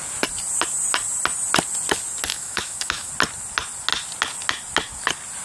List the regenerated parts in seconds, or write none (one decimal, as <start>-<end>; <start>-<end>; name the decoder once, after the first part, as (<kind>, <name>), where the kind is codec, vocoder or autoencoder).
2.3-3.1 (autoencoder, DAC-VAE)